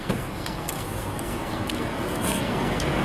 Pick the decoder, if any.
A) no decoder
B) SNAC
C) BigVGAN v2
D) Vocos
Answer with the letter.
B